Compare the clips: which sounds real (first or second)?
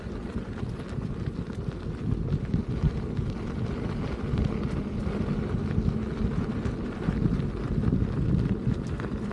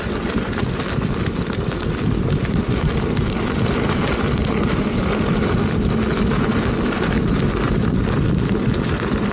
first